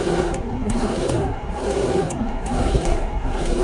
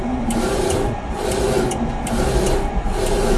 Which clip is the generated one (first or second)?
first